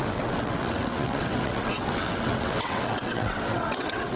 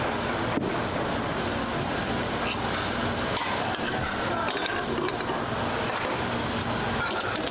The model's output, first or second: first